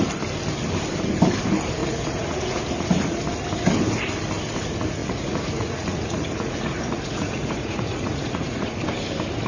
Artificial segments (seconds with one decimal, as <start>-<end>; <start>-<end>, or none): 1.8-3.2; 5.0-8.7